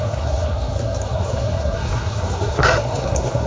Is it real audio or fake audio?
fake